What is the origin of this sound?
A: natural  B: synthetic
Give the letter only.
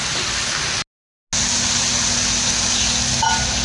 A